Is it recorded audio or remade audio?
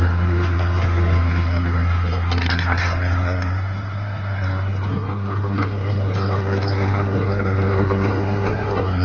remade